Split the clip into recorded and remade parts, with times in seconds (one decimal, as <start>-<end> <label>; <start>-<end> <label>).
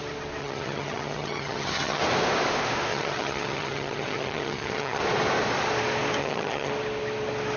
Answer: 0.0-0.4 recorded; 0.4-2.0 remade; 2.0-2.9 recorded; 2.9-5.0 remade; 5.0-6.2 recorded; 6.2-6.7 remade; 6.7-7.6 recorded